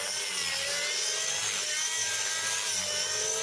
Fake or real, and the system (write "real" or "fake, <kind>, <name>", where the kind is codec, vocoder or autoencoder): real